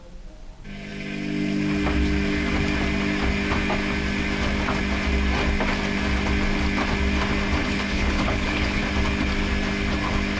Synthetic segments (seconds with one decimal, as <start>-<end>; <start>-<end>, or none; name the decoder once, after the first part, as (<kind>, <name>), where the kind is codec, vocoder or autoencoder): 7.6-8.8 (codec, HILCodec)